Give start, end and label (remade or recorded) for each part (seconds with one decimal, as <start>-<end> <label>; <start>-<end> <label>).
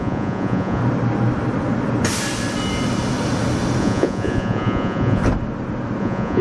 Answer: 0.0-0.8 remade; 0.8-3.8 recorded; 3.8-5.2 remade; 5.2-6.0 recorded; 6.0-6.4 remade